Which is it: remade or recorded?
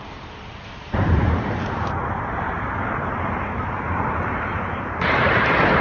remade